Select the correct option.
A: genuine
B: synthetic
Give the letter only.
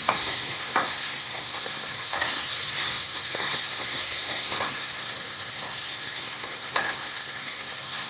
B